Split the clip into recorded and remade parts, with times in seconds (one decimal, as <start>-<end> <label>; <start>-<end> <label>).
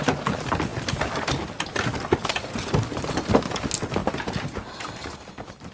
0.0-5.7 recorded